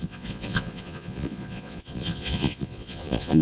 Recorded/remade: remade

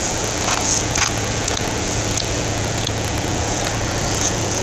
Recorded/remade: remade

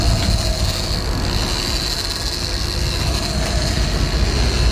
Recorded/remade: recorded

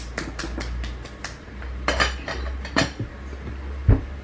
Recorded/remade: recorded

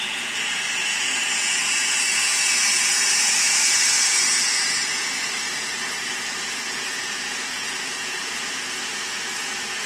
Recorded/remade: remade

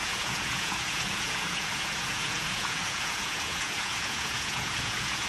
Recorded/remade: remade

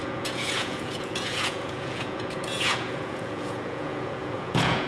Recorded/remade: remade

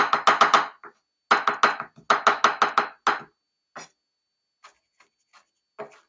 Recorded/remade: recorded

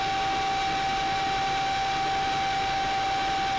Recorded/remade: recorded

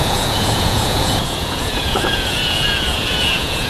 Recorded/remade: remade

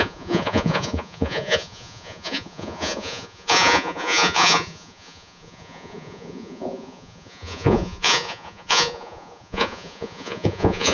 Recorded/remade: remade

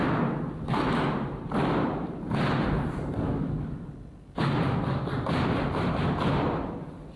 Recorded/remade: recorded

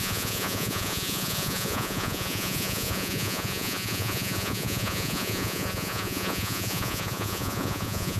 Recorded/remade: remade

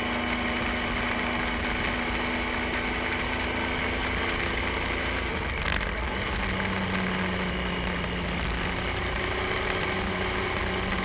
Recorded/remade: recorded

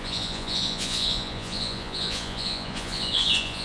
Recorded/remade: remade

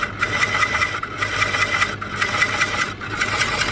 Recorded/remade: recorded